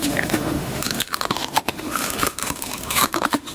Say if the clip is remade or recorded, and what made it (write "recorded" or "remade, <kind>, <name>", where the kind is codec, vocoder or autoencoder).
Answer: remade, autoencoder, DAC-VAE